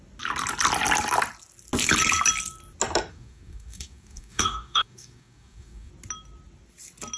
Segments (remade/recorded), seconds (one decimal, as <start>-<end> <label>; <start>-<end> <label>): 0.0-3.1 recorded; 3.1-5.9 remade; 5.9-7.2 recorded

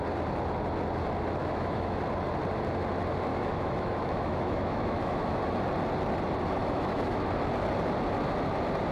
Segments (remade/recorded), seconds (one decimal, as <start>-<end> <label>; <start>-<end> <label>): 0.0-1.4 recorded; 1.4-2.0 remade; 2.0-3.3 recorded; 3.3-5.4 remade; 5.4-6.6 recorded; 6.6-7.2 remade; 7.2-8.9 recorded

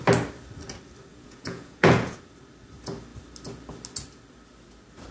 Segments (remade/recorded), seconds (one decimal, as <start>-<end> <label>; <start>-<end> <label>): 0.0-1.1 recorded; 1.1-2.2 remade; 2.2-5.1 recorded